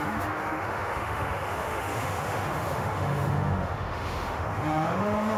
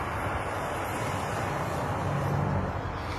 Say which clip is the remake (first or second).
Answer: first